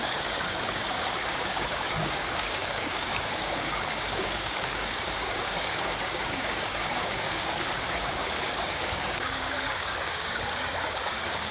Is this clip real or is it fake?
fake